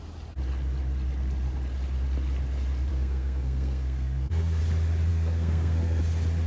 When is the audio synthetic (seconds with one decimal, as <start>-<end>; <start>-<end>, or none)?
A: 2.9-4.6; 5.1-6.0

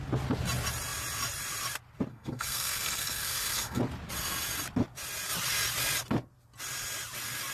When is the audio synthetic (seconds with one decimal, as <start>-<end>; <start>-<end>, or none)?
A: 2.1-3.8